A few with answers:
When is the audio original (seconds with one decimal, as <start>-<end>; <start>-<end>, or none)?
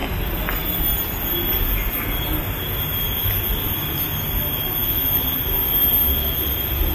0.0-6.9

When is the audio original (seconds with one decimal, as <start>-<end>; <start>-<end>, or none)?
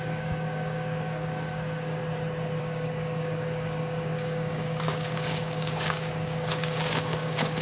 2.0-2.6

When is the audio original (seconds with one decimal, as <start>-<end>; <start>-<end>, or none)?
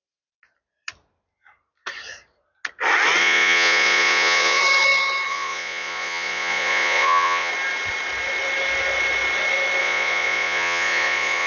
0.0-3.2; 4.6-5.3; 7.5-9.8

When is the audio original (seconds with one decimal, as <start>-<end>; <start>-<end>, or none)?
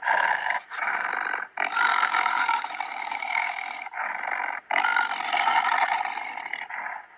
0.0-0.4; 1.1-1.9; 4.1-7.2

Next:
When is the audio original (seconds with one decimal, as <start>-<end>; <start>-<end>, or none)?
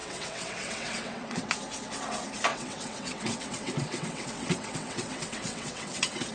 1.5-2.5